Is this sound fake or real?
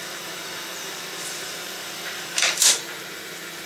fake